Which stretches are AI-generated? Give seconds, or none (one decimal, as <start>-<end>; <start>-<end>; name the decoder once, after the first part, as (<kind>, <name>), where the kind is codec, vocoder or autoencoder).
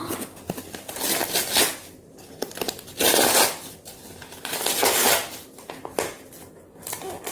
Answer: none